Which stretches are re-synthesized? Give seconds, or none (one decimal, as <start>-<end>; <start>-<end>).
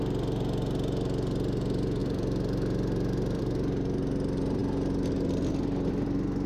2.0-3.4